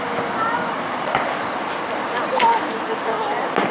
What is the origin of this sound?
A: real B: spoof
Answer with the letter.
A